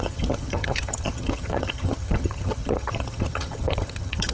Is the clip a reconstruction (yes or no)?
yes